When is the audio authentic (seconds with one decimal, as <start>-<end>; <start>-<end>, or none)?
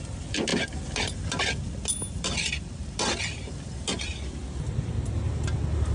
0.0-5.9